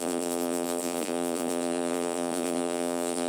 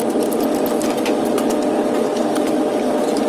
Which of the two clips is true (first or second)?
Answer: second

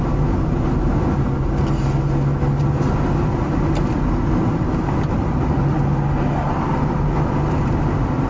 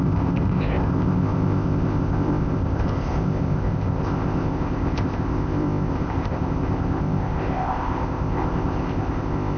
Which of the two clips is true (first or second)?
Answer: first